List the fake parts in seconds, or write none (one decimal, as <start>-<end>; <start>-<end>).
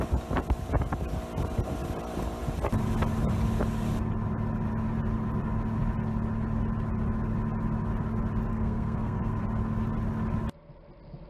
8.5-9.4